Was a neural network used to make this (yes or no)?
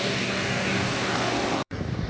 yes